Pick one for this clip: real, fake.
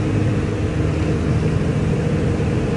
real